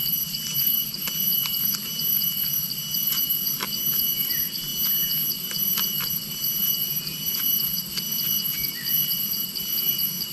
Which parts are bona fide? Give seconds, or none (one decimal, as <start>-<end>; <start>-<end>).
4.7-5.3